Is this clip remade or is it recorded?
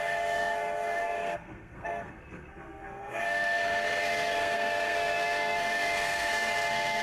remade